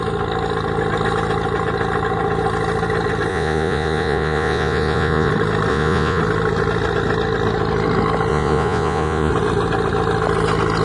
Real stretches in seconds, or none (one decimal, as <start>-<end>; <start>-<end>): 0.0-3.3; 5.3-5.7; 6.2-8.3; 9.3-10.8